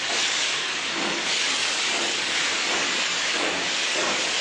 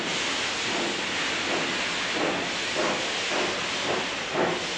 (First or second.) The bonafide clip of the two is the second